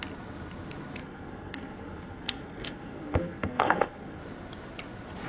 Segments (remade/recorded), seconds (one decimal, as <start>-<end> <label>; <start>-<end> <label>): 0.0-1.0 recorded; 1.0-4.2 remade; 4.2-5.3 recorded